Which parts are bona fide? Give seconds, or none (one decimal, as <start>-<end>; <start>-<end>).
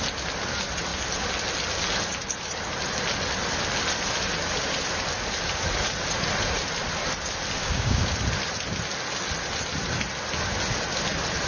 0.0-7.6; 8.1-11.5